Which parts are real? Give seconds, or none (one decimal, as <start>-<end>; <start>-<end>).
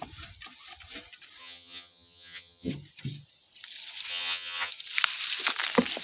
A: 0.0-1.4; 2.7-4.1; 4.7-6.0